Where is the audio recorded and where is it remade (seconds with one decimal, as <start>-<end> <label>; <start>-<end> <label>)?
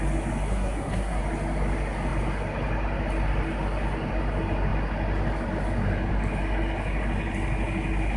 0.0-0.5 recorded; 0.5-1.2 remade; 1.2-8.2 recorded